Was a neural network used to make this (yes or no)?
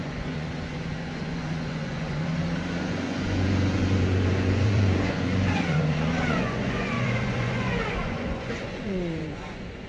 yes